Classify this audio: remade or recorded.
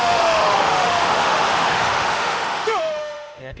remade